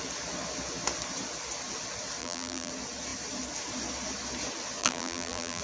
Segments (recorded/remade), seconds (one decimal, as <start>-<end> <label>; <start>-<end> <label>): 0.0-2.2 recorded; 2.2-2.7 remade; 2.7-4.8 recorded; 4.8-5.6 remade